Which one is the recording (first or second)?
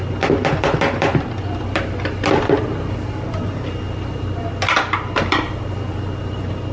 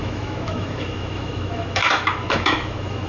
first